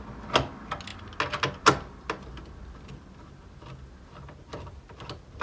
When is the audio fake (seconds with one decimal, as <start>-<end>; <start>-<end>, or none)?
none